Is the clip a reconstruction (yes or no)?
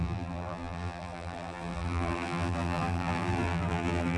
yes